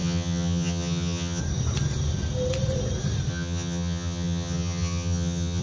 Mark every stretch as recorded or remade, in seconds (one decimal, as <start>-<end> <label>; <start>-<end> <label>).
0.0-1.4 remade; 1.4-3.3 recorded; 3.3-5.6 remade